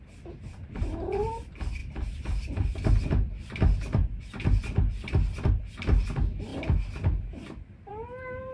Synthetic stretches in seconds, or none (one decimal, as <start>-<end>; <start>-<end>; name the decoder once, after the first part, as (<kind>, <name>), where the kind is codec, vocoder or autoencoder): 1.8-5.6 (vocoder, BigVGAN v2)